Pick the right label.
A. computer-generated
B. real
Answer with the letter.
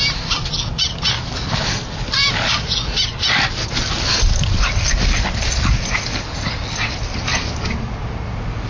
B